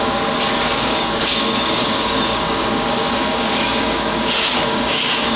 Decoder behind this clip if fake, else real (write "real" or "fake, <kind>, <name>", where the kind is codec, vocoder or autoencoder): fake, codec, DAC